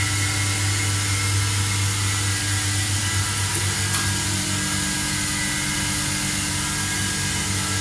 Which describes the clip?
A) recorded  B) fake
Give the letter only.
A